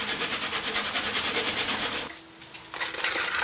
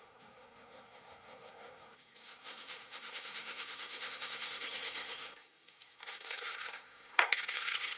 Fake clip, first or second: second